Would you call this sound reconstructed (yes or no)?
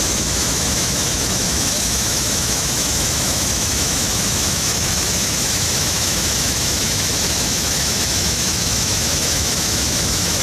yes